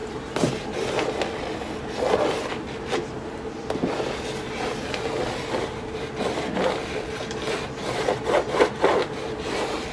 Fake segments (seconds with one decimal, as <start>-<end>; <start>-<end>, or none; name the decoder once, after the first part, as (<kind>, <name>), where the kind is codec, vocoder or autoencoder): none